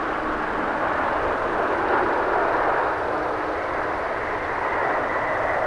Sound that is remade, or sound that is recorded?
recorded